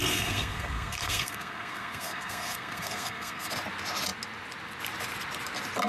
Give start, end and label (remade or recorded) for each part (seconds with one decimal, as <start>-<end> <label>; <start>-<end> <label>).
0.0-3.5 remade; 3.5-5.9 recorded